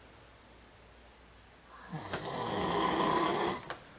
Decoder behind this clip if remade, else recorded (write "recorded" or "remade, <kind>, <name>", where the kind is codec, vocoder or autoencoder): recorded